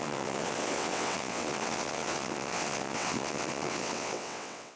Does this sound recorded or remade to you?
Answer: remade